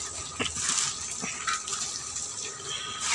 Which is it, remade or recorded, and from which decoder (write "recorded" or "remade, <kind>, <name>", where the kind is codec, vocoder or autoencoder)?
recorded